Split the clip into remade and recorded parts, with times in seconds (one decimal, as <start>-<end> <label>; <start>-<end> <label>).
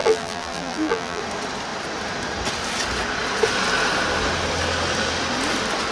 0.0-1.2 remade; 1.2-5.9 recorded